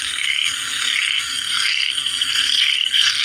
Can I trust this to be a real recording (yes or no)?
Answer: no